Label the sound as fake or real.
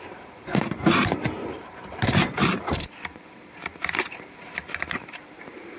fake